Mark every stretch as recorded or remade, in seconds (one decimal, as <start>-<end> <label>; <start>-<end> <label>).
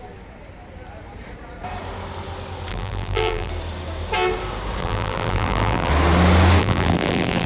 0.0-2.7 recorded; 2.7-3.5 remade; 3.5-4.8 recorded; 4.8-5.9 remade; 5.9-6.6 recorded; 6.6-7.5 remade